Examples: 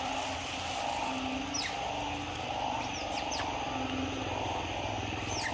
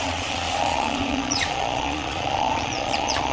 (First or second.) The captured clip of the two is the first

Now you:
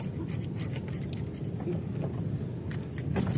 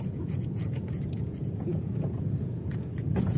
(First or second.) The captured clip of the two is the first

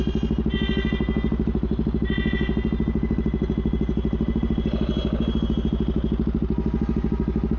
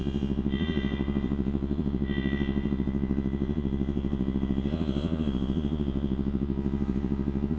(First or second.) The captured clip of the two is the first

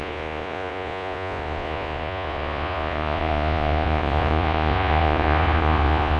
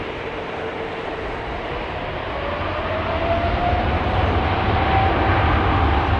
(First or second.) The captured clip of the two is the second